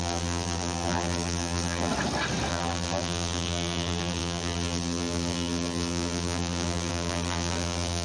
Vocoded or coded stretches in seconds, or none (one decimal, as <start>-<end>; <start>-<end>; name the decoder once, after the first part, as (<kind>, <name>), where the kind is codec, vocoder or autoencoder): 0.0-1.9 (vocoder, BigVGAN v2); 2.5-8.0

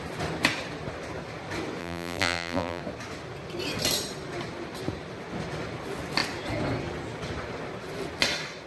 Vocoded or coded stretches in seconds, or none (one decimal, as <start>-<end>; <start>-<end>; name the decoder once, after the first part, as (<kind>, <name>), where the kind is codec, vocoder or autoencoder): 1.8-2.8 (vocoder, BigVGAN v2)